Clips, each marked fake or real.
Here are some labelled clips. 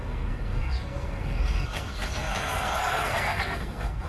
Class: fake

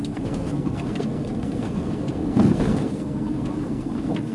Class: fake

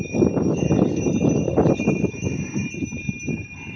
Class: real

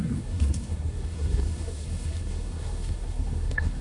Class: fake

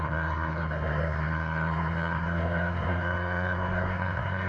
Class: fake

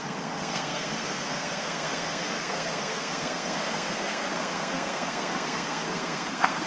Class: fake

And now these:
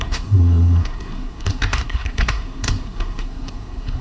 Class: fake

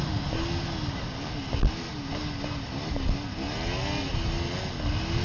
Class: real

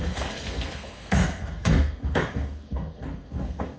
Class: fake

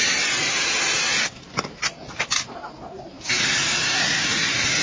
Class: real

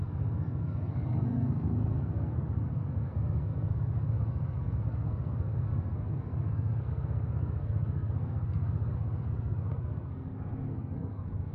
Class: fake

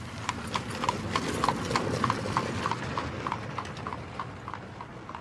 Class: real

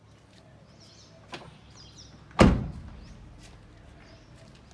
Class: real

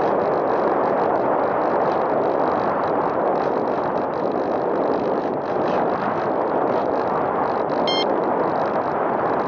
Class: real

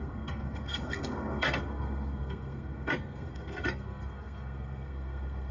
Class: fake